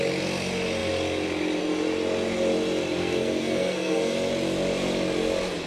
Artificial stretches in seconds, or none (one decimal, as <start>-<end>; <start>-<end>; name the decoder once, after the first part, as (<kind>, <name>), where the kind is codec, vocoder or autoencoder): 3.0-4.3 (codec, SNAC)